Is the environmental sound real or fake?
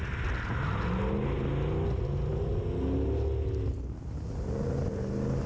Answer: real